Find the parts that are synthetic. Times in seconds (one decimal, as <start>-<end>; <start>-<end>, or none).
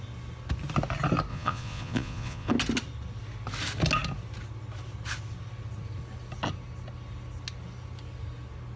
1.3-2.5